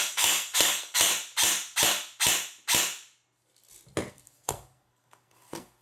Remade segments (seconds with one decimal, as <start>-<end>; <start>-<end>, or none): 0.0-1.1; 4.1-5.8